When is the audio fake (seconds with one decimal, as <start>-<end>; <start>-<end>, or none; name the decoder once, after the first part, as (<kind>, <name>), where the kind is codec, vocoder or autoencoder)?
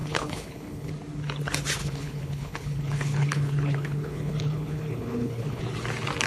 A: 0.0-0.9 (codec, HILCodec); 1.8-5.6